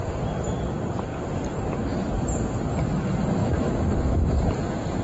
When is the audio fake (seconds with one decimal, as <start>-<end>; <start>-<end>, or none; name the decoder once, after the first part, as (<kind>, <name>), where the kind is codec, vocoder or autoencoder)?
3.4-4.3 (autoencoder, DAC-VAE)